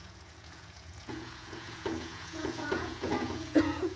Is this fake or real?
fake